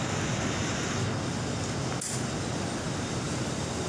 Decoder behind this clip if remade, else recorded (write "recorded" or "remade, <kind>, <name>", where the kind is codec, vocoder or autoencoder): recorded